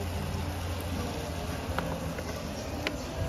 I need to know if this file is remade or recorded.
recorded